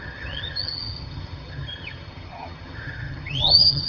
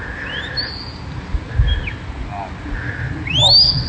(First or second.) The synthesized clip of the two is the first